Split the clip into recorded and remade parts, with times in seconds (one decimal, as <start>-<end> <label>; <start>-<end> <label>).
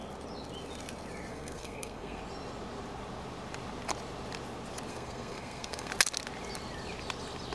0.0-1.3 recorded; 1.3-2.2 remade; 2.2-4.9 recorded; 4.9-5.9 remade; 5.9-7.5 recorded